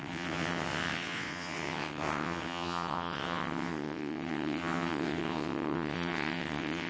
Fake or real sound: fake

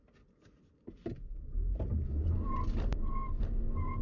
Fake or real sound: real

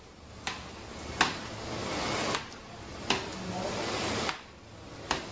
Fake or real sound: real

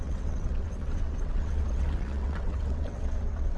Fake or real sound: fake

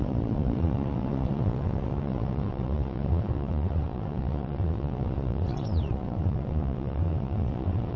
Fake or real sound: fake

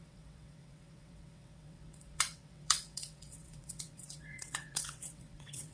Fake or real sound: fake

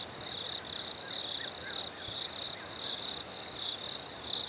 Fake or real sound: real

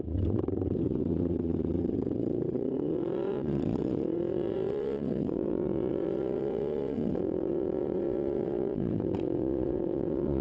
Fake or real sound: fake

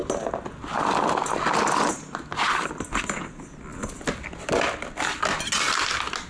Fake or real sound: real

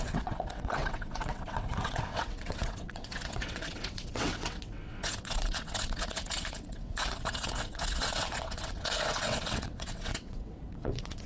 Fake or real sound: fake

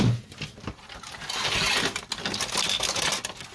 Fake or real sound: real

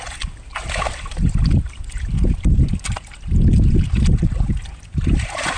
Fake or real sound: real